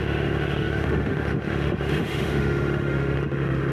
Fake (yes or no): yes